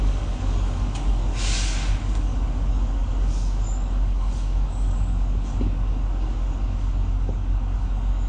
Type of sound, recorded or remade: remade